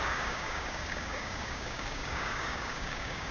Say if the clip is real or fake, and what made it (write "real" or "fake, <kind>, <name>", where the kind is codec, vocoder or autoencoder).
fake, codec, DAC